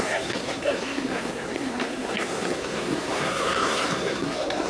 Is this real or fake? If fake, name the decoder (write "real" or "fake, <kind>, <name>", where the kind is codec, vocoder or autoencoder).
fake, codec, SNAC